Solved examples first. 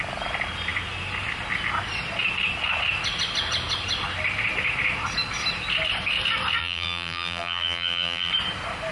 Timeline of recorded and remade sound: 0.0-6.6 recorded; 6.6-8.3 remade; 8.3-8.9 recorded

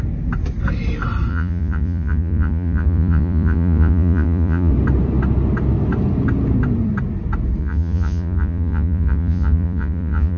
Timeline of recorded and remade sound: 0.0-1.3 recorded; 1.3-4.7 remade; 4.7-7.6 recorded; 7.6-10.4 remade

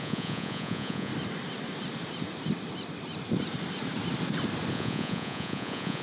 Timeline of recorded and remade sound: 0.0-1.1 remade; 1.1-4.7 recorded; 4.7-6.0 remade

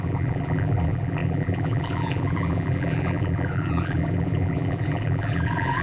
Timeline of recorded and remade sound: 0.0-5.8 remade